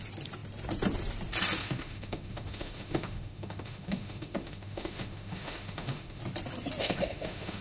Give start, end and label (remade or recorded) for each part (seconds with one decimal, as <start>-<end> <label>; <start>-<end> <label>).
0.0-1.6 recorded; 1.6-6.2 remade; 6.2-6.8 recorded; 6.8-7.6 remade